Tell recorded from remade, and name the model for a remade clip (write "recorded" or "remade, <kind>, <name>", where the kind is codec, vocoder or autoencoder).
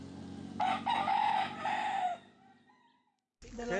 recorded